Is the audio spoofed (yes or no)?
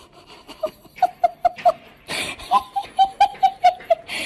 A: yes